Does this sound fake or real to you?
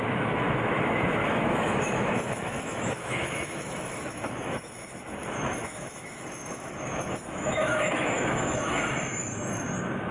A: fake